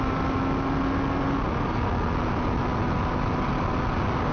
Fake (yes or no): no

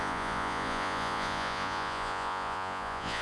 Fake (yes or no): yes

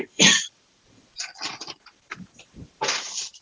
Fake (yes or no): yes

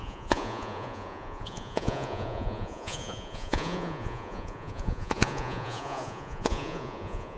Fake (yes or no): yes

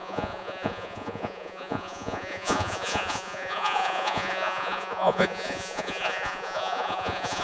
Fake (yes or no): yes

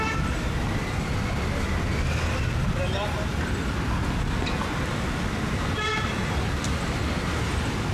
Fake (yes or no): no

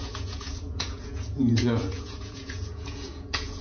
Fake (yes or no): yes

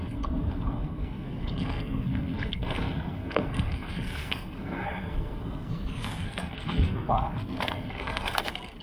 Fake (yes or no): yes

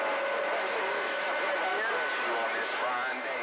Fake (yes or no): no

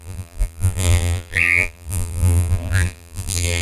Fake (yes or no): yes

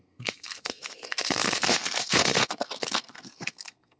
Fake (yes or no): yes